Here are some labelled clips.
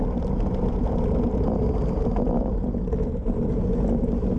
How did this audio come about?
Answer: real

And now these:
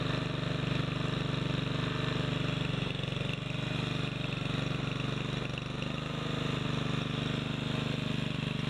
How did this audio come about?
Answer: real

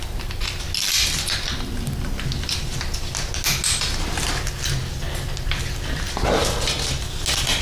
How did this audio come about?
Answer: real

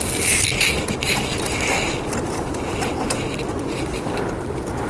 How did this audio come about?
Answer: real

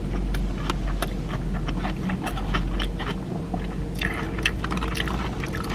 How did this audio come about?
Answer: real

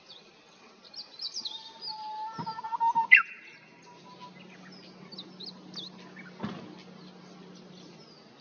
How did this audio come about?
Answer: real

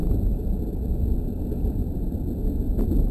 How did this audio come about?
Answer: real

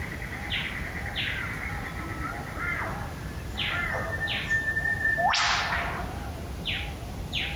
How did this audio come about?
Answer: real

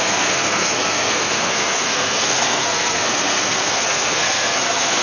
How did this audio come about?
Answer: fake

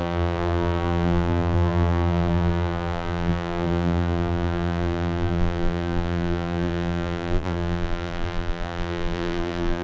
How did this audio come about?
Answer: fake